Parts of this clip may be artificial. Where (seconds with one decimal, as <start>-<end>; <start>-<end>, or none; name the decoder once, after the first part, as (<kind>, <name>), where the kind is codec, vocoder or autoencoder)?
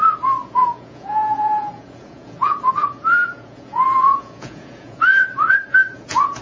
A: 0.0-6.4 (vocoder, Vocos)